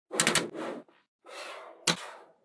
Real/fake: real